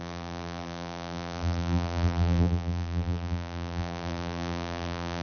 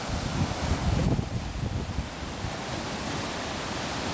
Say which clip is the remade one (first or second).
first